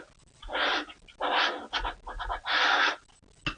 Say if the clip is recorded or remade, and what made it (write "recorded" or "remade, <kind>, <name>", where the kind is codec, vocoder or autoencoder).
recorded